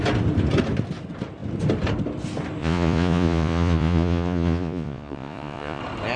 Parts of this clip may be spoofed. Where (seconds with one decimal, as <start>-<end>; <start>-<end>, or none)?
2.6-5.8